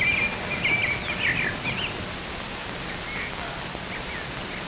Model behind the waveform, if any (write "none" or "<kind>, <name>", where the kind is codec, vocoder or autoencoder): none